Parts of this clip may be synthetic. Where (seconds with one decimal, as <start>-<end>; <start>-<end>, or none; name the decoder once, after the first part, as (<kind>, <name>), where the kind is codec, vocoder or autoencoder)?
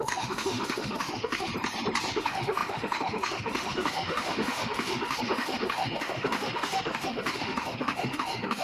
0.0-1.5 (autoencoder, DAC-VAE); 2.1-8.6